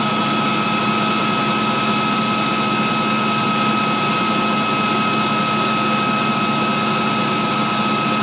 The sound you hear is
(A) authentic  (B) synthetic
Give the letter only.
A